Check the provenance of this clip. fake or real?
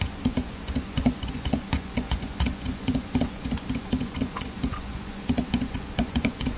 fake